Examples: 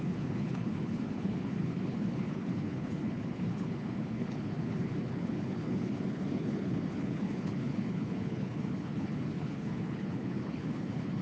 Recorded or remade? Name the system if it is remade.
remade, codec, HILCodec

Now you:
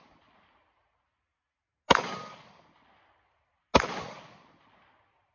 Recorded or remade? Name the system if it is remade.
recorded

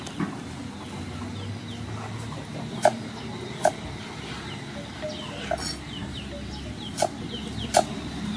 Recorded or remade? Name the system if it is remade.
recorded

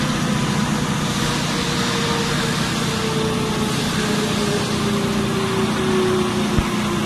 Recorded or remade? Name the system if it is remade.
recorded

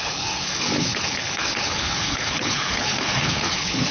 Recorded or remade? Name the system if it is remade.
remade, codec, HILCodec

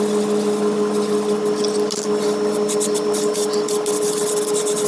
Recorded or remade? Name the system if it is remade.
recorded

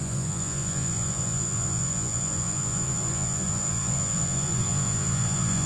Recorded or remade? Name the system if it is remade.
remade, vocoder, Vocos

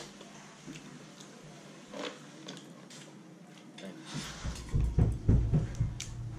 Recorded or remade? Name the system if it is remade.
recorded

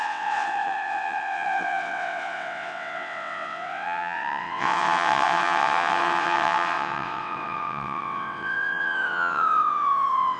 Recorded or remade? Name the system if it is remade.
remade, vocoder, WaveNeXt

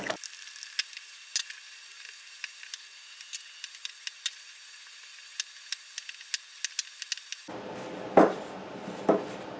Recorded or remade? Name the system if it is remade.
recorded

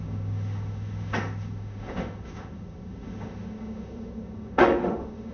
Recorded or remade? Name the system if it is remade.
remade, autoencoder, DAC-VAE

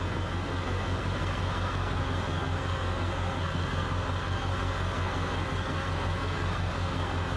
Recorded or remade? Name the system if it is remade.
remade, codec, SNAC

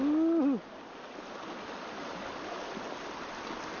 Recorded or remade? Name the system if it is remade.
recorded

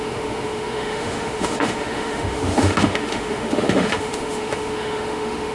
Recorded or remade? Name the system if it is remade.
remade, autoencoder, DAC-VAE